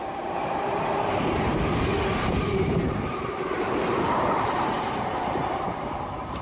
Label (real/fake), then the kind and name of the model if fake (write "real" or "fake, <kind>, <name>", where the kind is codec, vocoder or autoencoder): fake, vocoder, BigVGAN v2